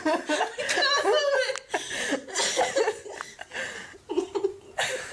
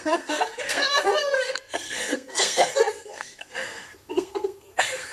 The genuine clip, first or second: first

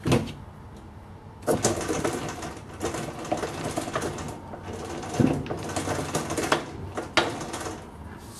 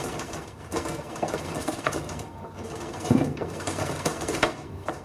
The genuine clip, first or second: first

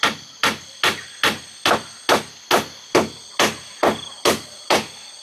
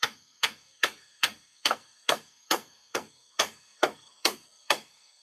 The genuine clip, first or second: first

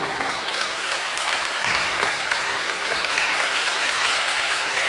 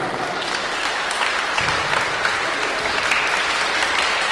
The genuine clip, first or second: second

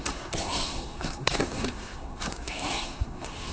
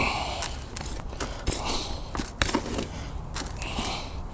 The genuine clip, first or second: second